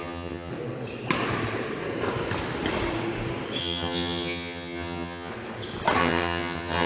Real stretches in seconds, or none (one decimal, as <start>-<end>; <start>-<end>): 0.5-3.6; 5.3-6.0